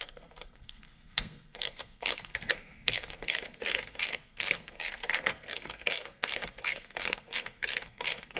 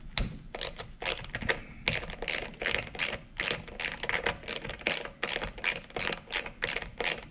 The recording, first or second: second